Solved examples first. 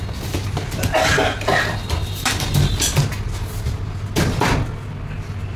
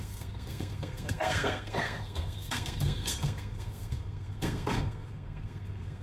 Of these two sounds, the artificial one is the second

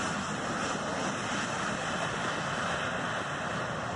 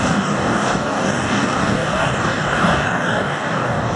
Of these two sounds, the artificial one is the second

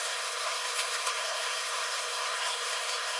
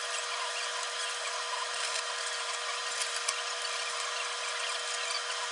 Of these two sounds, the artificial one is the first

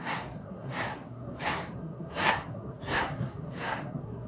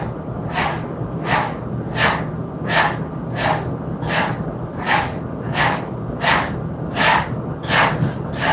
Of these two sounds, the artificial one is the first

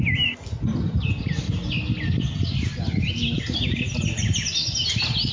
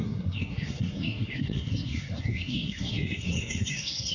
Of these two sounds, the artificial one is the second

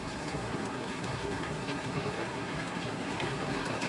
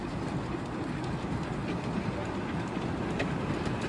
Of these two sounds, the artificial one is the first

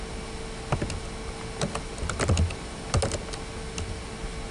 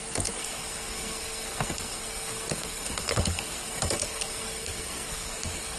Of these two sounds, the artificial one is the second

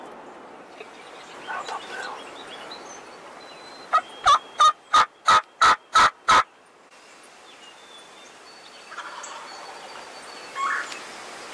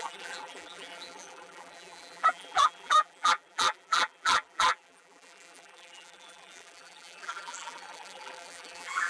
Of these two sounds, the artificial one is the second